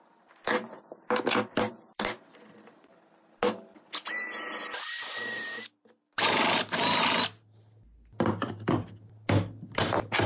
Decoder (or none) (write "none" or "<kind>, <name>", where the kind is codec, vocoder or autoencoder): none